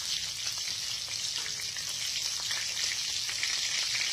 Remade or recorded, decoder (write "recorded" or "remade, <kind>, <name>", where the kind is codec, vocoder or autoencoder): recorded